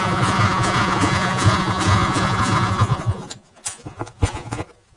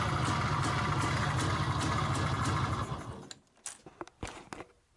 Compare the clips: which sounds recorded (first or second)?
second